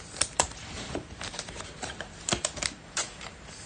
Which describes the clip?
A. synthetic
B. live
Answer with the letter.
A